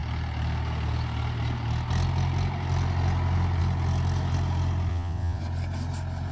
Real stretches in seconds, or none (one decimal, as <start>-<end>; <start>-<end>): 0.0-4.9; 5.4-6.3